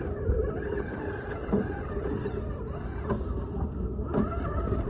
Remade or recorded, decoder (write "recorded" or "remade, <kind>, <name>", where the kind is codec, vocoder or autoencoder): recorded